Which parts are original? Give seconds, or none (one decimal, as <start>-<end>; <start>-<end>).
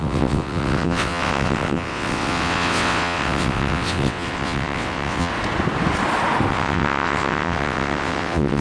5.3-6.5